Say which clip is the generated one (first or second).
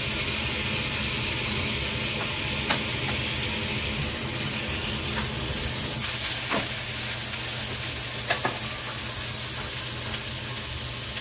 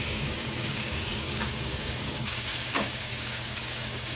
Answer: second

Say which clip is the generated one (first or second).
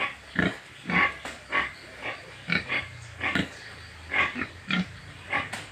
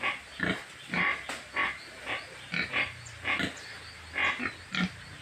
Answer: first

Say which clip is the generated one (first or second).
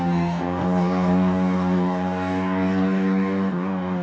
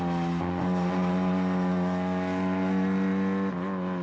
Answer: first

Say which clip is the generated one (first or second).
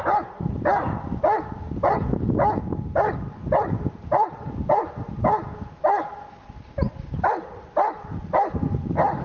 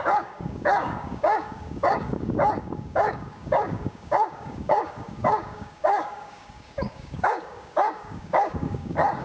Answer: second